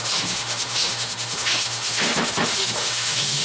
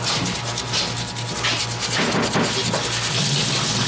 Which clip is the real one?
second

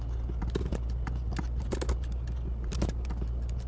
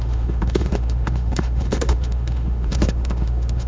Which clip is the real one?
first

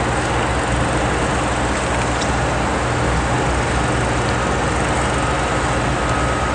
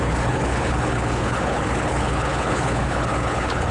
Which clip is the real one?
first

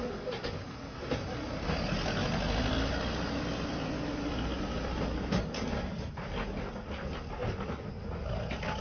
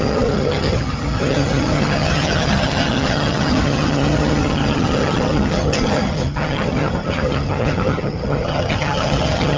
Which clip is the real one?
first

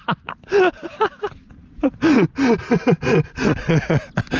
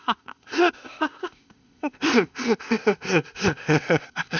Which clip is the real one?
first